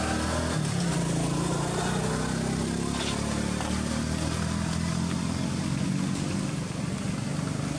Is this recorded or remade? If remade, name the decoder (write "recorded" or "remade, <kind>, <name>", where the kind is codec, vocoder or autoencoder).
recorded